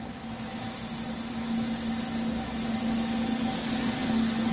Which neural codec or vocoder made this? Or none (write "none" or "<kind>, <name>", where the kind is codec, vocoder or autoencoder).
none